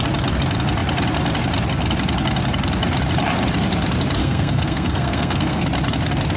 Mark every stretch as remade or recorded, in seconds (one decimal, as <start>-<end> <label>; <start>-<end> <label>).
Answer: 0.0-4.2 recorded; 4.2-5.6 remade; 5.6-6.4 recorded